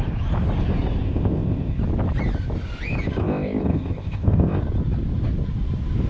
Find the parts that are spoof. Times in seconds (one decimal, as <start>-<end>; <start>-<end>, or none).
1.0-1.8; 3.2-4.6